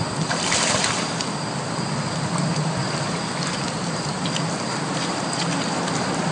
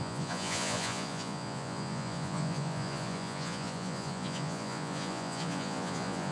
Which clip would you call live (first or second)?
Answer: first